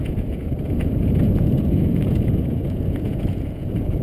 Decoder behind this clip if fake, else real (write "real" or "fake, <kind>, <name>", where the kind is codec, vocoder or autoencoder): fake, vocoder, Vocos